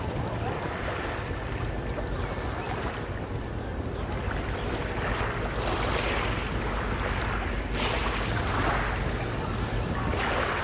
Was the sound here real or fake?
real